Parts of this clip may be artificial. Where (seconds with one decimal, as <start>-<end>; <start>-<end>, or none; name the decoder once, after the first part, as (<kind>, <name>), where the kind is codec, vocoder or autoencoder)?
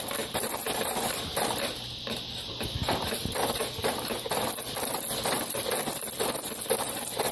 none